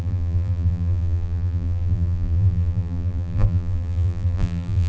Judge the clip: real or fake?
fake